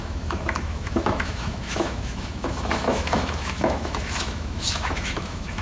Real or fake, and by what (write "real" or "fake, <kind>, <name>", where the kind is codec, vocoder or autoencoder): fake, autoencoder, DAC-VAE